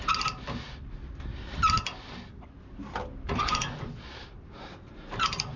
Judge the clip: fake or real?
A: real